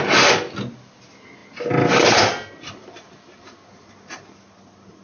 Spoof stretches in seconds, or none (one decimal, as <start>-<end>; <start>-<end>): none

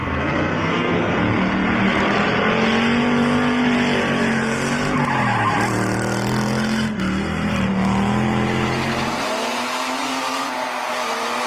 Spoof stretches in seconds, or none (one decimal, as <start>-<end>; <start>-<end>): 0.0-1.2

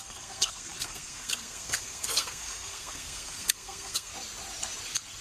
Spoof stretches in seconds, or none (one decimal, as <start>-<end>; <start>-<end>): 0.0-4.1

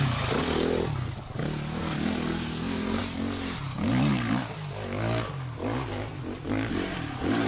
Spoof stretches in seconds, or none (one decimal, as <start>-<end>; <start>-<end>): 1.8-3.0

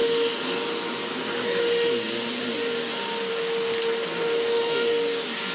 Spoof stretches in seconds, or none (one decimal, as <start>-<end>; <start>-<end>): none

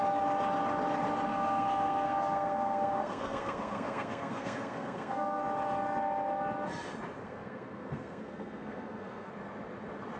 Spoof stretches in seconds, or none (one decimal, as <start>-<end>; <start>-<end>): 1.3-5.4; 7.2-9.3

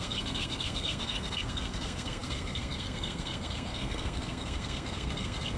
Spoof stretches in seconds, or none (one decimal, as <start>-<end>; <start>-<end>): 0.0-5.6